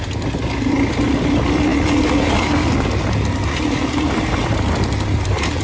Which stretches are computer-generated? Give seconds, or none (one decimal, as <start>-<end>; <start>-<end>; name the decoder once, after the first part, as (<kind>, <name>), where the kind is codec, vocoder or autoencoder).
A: none